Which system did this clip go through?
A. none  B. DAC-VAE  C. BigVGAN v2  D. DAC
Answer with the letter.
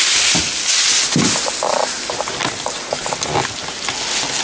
A